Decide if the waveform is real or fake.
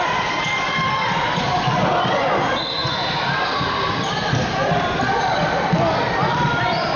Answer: fake